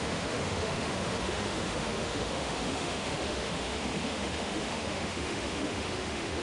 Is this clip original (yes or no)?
no